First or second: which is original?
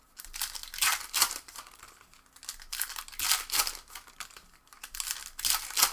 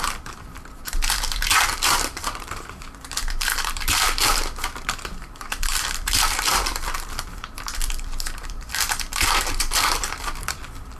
first